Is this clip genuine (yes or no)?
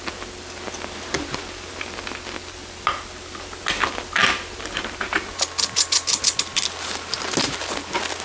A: yes